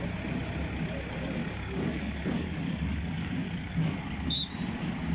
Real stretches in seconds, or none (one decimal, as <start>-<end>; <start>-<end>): 0.0-1.4; 4.5-5.1